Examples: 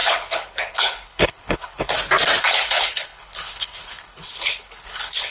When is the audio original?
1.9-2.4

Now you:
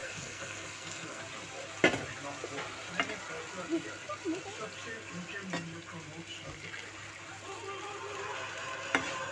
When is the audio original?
1.2-9.3

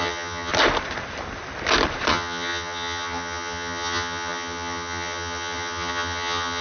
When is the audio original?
0.5-2.1

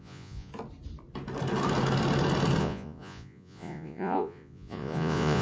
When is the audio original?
0.5-2.6

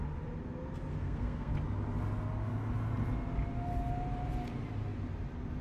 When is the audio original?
0.0-0.9; 1.5-5.6